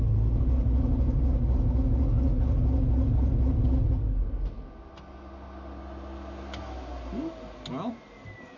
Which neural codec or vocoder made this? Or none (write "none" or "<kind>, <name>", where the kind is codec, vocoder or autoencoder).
none